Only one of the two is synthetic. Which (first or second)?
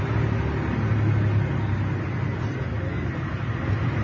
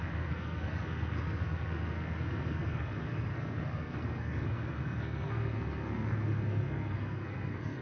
second